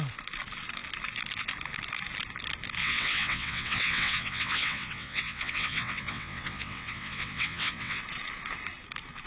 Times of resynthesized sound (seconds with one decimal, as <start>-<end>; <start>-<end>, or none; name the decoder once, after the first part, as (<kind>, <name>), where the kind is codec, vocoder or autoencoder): 2.8-8.0 (vocoder, WaveNeXt)